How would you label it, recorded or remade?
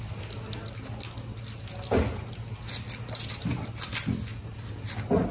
recorded